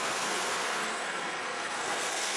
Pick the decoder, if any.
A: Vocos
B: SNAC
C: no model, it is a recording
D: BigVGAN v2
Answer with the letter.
B